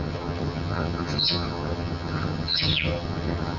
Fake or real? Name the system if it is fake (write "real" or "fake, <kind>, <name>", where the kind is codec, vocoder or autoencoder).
fake, vocoder, HiFi-GAN